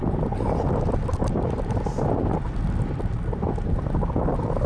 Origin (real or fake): real